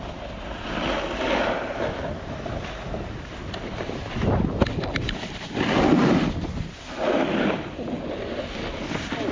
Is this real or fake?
real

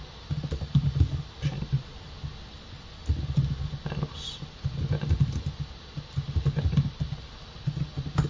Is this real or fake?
real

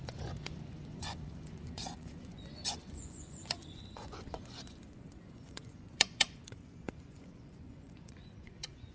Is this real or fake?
fake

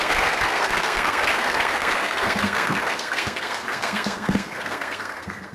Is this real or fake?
fake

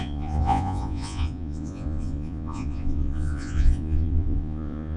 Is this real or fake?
fake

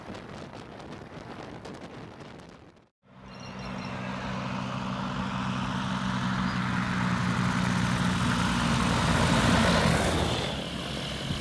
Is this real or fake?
real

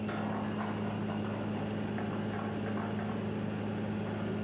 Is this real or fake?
real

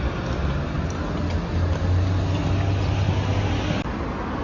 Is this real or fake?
real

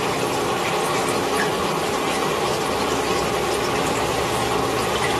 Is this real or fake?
real